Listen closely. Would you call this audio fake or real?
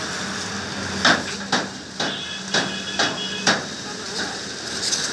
real